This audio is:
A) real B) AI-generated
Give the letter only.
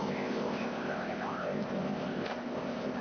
B